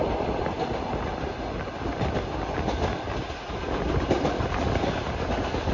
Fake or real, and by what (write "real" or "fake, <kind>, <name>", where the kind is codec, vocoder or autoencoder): real